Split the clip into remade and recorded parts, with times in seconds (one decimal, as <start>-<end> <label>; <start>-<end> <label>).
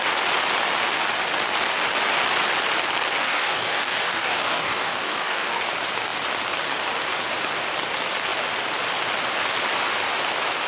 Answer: 0.0-3.2 recorded; 3.2-5.6 remade; 5.6-10.7 recorded